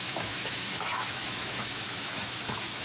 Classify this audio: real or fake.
fake